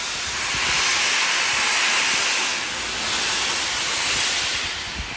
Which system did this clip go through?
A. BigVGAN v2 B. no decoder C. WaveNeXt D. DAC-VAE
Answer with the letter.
B